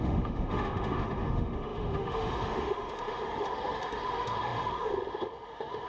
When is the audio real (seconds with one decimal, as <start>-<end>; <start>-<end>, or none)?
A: none